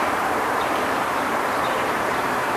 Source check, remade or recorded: remade